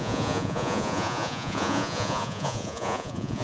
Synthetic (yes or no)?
yes